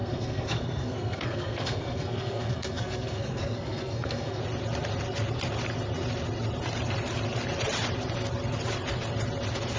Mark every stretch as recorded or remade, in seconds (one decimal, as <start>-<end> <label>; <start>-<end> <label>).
0.0-4.4 remade; 4.4-9.8 recorded